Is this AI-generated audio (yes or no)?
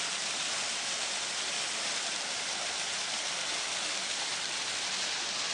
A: no